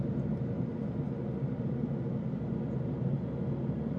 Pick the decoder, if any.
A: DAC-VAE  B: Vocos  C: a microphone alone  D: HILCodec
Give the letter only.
C